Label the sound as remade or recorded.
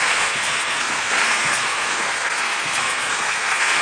remade